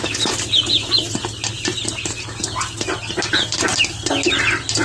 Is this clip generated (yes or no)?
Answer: no